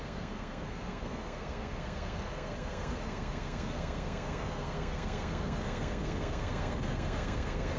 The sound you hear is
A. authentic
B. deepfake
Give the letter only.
B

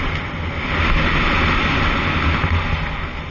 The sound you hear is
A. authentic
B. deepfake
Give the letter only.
A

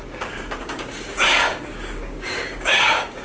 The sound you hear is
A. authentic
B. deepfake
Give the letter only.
B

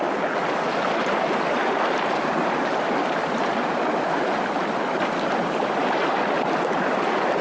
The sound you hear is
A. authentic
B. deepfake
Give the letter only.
A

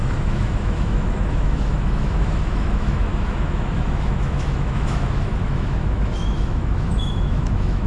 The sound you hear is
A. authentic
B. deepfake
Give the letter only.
B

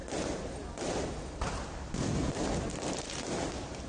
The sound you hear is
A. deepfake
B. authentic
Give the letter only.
B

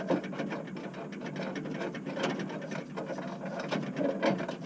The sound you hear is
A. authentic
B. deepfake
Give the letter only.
A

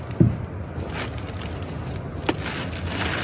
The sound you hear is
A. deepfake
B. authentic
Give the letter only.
B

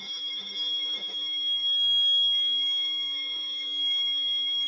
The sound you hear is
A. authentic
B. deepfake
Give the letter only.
B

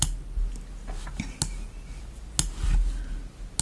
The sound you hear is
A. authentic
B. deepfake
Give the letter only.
A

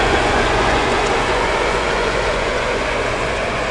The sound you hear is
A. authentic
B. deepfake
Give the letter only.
B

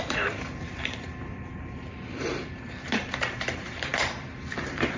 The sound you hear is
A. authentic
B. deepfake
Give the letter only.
B